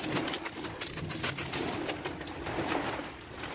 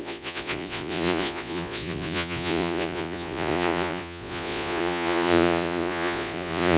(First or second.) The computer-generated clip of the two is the second